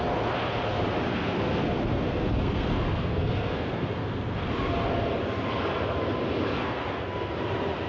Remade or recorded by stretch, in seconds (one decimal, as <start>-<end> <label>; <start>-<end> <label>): 0.0-1.1 recorded; 1.1-4.5 remade; 4.5-6.5 recorded; 6.5-7.3 remade; 7.3-7.9 recorded